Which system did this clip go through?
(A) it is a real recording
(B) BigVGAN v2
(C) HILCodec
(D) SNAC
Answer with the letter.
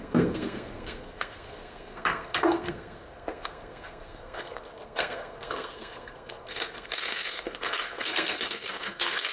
D